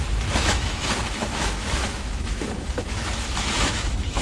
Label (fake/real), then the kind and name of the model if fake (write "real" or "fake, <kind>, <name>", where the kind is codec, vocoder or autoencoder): fake, autoencoder, DAC-VAE